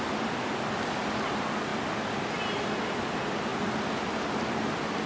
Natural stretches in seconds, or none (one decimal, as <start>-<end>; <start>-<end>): 0.0-1.7; 3.0-5.1